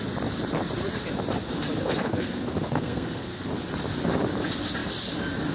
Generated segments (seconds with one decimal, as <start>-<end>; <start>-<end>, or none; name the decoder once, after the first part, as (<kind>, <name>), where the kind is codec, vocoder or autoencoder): 1.8-3.5 (codec, SNAC)